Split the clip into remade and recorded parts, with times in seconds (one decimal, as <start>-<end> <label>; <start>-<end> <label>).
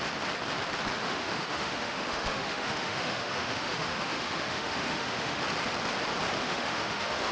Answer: 0.0-1.0 recorded; 1.0-5.4 remade; 5.4-6.4 recorded; 6.4-7.3 remade